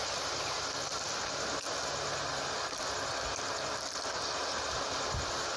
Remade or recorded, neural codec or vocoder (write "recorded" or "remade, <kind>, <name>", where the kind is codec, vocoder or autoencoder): recorded